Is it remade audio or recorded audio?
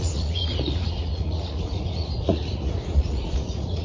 remade